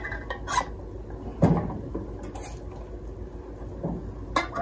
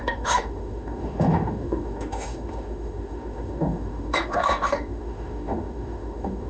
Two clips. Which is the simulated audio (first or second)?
second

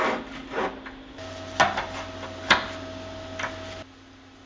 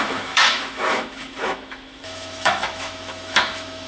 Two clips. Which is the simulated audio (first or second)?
second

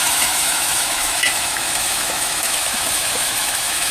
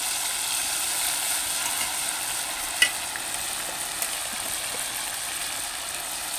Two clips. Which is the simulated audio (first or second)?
first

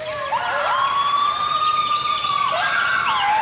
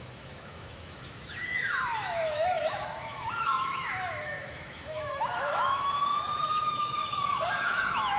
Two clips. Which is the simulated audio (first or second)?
second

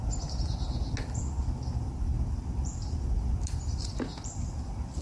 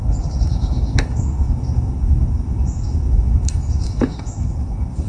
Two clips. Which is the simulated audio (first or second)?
second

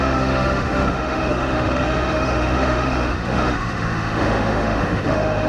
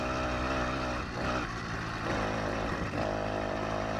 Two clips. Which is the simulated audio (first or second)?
first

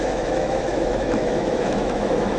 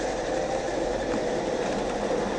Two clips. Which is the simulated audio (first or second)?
first